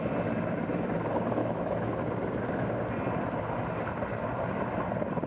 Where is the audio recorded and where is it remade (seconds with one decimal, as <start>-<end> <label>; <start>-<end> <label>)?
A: 0.0-1.4 recorded; 1.4-2.0 remade; 2.0-5.3 recorded